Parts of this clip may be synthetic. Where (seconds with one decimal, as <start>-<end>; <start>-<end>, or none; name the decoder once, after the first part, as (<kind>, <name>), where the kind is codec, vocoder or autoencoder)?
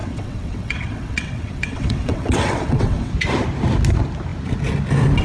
0.0-3.1 (vocoder, WaveNeXt)